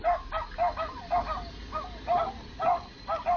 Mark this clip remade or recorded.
recorded